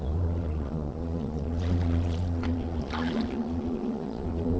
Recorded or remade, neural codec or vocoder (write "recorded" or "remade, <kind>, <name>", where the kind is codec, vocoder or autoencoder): remade, vocoder, Vocos